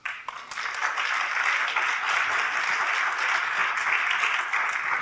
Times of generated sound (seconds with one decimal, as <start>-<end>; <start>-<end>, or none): none